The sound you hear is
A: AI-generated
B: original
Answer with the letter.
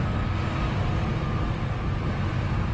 B